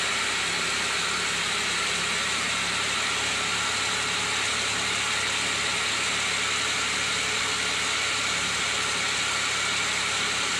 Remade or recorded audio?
recorded